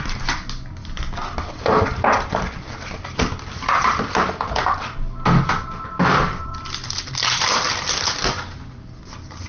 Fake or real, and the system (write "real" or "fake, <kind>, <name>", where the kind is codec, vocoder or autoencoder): real